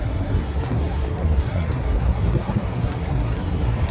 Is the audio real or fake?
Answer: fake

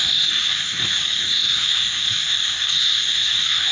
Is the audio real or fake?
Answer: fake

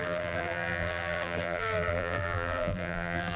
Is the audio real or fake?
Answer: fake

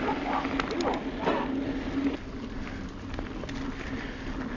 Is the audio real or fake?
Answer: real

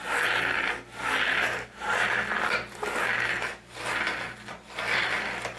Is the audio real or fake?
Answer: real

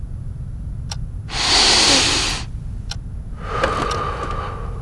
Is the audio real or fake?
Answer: real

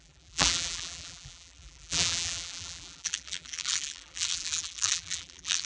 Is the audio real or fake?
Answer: fake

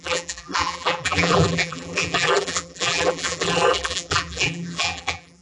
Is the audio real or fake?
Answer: fake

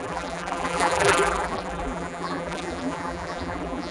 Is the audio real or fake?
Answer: fake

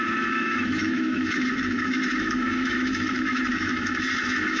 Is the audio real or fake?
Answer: fake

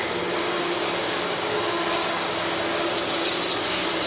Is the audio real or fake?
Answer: fake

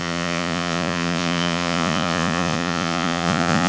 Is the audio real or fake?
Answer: fake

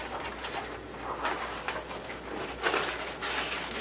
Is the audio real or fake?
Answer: real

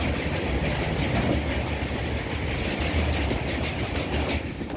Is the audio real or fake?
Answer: real